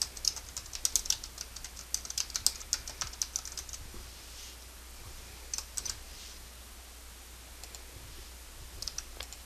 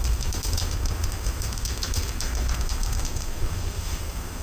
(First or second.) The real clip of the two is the first